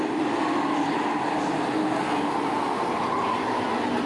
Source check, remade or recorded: recorded